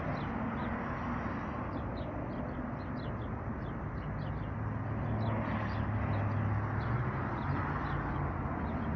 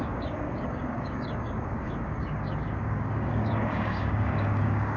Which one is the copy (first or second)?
second